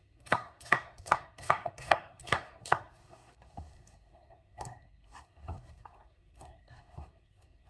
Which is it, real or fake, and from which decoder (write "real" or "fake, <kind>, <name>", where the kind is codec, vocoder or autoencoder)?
fake, codec, SNAC